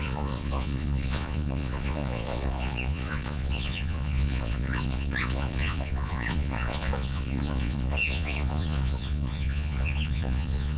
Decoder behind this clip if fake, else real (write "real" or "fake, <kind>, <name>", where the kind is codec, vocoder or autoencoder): fake, vocoder, Vocos